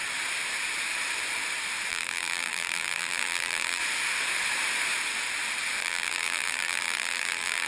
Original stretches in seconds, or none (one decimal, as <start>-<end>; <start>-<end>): 0.0-1.9; 3.8-5.8